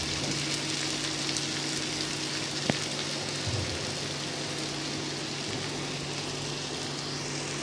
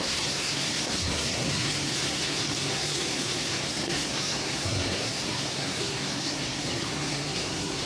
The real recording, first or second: first